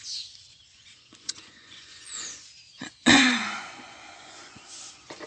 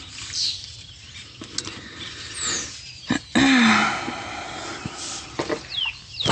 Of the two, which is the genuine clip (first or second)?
second